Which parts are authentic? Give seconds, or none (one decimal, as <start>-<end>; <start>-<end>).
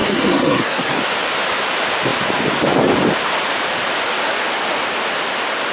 1.0-5.7